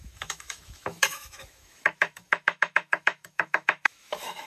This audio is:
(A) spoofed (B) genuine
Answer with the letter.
A